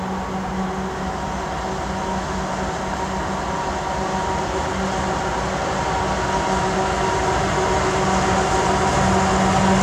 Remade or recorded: recorded